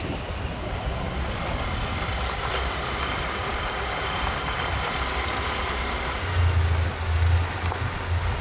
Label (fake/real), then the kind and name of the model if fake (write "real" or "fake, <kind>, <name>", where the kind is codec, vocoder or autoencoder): real